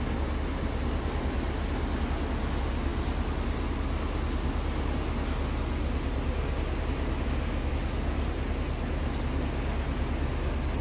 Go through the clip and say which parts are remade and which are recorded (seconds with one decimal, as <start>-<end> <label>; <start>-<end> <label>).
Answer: 0.0-10.8 recorded